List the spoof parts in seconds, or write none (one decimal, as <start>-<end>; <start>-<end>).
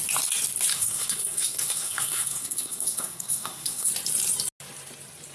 0.7-3.9